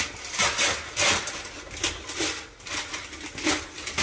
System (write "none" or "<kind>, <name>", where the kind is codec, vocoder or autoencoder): none